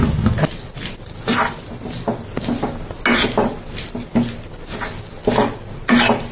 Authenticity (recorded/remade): recorded